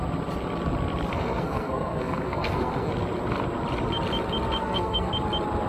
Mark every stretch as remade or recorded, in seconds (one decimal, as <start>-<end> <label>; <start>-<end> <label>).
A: 0.0-1.1 recorded; 1.1-2.9 remade; 2.9-4.6 recorded; 4.6-5.1 remade; 5.1-5.7 recorded

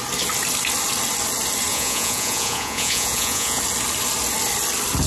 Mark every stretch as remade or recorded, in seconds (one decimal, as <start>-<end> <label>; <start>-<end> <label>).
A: 0.0-1.7 recorded; 1.7-3.6 remade; 3.6-5.1 recorded